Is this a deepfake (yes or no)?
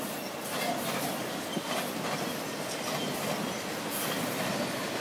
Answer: no